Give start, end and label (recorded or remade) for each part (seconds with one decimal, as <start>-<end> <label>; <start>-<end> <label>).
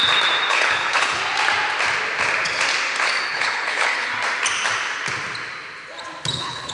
0.0-0.5 recorded; 0.5-1.2 remade; 1.2-3.2 recorded; 3.2-4.1 remade; 4.1-6.3 recorded; 6.3-6.7 remade